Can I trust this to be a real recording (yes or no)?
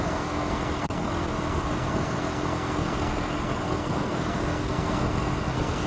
no